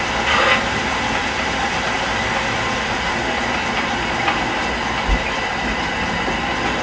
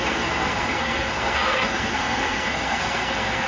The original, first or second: first